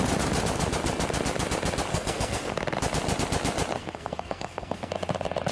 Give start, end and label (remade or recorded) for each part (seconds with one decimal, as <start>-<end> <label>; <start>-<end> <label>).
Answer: 0.0-1.9 recorded; 1.9-2.5 remade; 2.5-3.8 recorded; 3.8-4.9 remade; 4.9-5.5 recorded